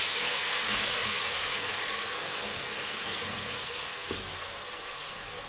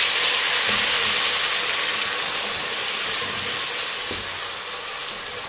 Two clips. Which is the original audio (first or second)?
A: second